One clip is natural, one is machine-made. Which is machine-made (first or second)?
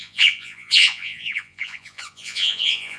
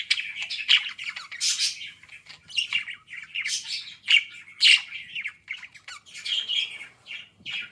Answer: first